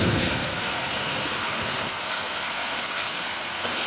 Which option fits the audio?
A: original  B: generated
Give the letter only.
B